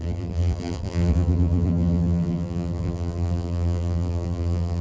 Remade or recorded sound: remade